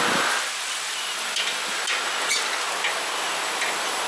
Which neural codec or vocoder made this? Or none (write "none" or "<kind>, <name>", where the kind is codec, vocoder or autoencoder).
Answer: none